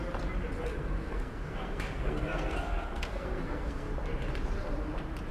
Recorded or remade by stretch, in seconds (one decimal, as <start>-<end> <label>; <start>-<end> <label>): 0.0-0.7 recorded; 0.7-3.9 remade; 3.9-5.3 recorded